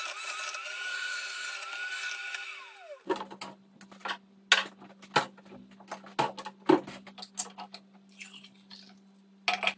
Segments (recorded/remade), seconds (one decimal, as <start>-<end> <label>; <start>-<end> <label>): 0.0-0.9 recorded; 0.9-1.5 remade; 1.5-9.8 recorded